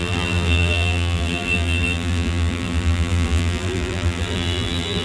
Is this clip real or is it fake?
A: fake